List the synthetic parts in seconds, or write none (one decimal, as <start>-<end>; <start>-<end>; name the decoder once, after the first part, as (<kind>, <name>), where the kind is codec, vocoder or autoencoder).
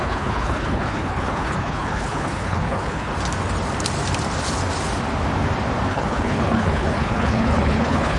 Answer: 0.0-3.1 (codec, HILCodec); 5.9-8.2